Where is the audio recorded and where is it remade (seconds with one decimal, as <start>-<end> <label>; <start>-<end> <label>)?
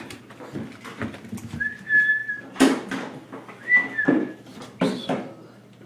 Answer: 0.0-4.5 recorded; 4.5-5.9 remade